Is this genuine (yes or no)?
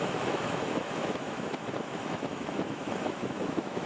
no